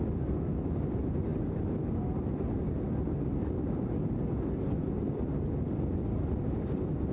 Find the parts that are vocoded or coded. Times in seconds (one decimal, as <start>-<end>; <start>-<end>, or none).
none